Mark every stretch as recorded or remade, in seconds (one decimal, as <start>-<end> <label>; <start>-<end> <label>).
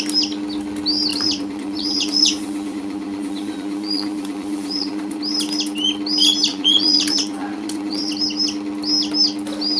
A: 0.0-1.1 recorded; 1.1-5.2 remade; 5.2-6.5 recorded; 6.5-8.1 remade; 8.1-9.8 recorded